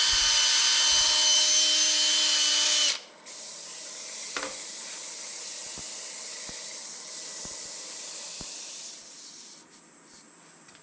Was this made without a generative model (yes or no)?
yes